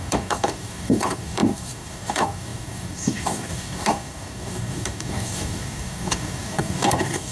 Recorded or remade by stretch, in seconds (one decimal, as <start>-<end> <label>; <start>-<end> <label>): 0.0-7.3 remade